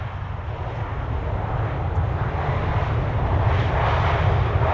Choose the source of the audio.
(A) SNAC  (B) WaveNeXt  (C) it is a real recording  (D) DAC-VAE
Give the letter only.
C